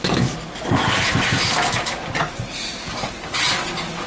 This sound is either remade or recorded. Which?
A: recorded